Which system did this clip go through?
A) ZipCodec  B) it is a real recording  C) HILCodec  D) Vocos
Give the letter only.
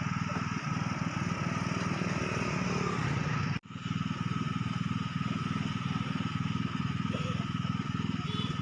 B